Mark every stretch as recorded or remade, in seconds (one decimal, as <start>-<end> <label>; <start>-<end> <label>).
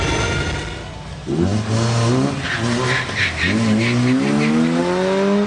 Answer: 0.0-5.5 recorded